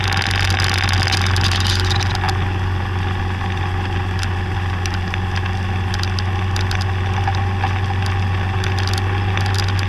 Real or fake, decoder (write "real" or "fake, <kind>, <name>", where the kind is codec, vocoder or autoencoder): real